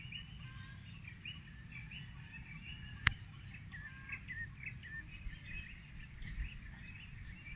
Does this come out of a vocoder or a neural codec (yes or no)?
no